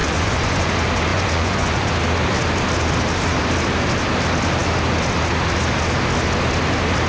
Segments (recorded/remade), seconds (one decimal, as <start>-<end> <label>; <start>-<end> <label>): 0.0-0.7 remade; 0.7-1.1 recorded; 1.1-1.9 remade; 1.9-7.1 recorded